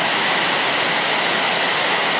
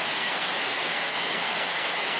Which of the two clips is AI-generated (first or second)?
second